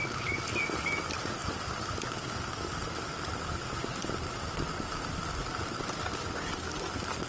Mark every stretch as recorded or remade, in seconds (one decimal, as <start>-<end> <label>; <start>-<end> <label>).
0.0-7.3 recorded